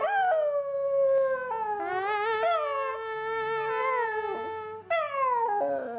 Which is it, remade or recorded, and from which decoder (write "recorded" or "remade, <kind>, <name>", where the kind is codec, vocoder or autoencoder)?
recorded